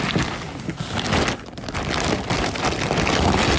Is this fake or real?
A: real